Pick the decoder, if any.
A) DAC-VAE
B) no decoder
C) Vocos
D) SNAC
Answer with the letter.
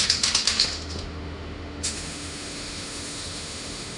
A